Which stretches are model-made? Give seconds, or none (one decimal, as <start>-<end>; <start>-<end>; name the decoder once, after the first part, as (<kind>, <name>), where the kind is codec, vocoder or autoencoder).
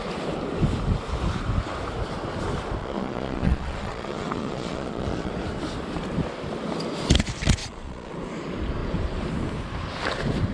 2.8-5.3 (vocoder, Vocos); 7.6-8.1